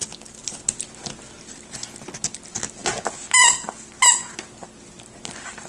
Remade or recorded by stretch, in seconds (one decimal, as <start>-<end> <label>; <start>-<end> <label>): 0.0-5.7 recorded